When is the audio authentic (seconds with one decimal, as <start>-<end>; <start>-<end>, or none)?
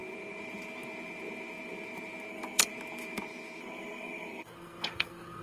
0.0-2.3; 2.7-3.6